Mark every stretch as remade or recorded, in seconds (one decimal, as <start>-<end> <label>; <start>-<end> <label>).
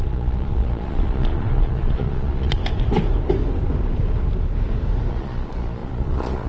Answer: 0.0-2.6 remade; 2.6-5.1 recorded; 5.1-6.5 remade